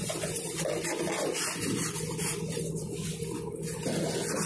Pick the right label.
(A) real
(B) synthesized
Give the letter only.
A